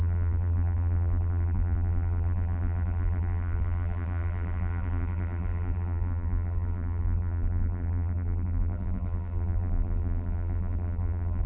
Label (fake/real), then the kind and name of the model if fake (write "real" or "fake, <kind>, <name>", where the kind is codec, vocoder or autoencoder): fake, vocoder, BigVGAN v2